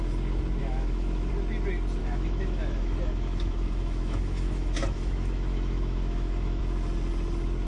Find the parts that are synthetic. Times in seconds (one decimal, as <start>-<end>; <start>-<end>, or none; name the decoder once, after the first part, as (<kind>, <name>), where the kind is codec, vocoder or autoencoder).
0.6-1.3 (autoencoder, DAC-VAE); 2.0-6.6